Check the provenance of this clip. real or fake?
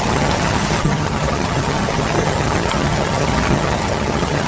fake